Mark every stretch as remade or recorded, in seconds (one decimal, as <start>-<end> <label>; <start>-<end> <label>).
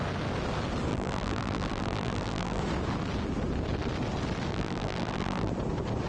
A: 0.0-0.9 recorded; 0.9-2.6 remade; 2.6-4.5 recorded; 4.5-5.5 remade; 5.5-6.1 recorded